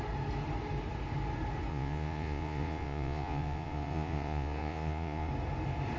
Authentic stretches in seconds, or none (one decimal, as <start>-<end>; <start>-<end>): 0.0-1.7; 5.3-6.0